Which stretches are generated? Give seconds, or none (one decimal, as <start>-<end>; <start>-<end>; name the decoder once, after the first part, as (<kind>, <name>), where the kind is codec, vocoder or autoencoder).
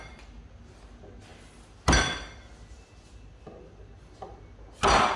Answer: none